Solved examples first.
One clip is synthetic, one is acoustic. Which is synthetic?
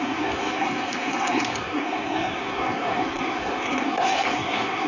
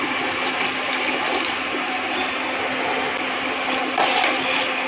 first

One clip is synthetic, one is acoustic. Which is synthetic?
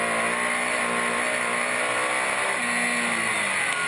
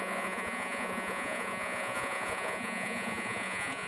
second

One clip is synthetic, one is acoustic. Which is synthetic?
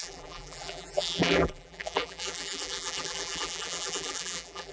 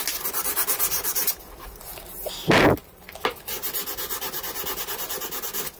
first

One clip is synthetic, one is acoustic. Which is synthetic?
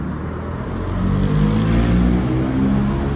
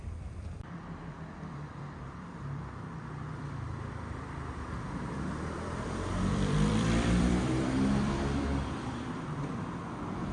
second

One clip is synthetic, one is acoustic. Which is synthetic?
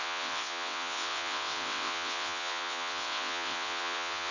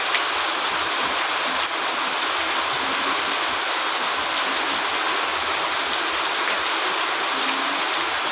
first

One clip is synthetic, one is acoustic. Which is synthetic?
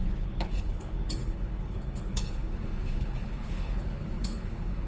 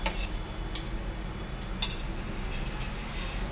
first